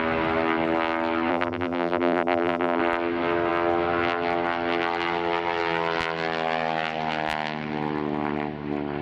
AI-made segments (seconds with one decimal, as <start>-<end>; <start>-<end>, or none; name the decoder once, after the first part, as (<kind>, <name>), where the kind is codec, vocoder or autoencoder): 1.3-2.8 (vocoder, BigVGAN v2)